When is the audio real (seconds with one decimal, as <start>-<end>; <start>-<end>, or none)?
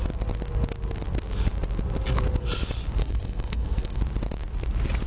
0.0-3.0; 4.0-5.1